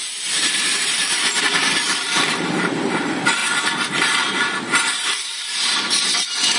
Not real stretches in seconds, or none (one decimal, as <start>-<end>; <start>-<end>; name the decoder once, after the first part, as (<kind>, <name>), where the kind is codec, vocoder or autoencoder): 0.0-3.4 (vocoder, BigVGAN v2); 3.9-6.6